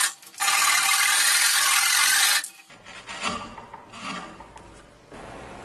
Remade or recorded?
recorded